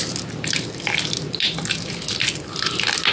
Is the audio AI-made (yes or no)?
no